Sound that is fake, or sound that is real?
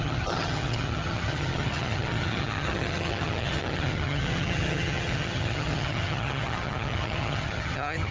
fake